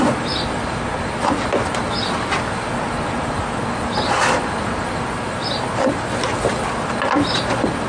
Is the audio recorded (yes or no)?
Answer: yes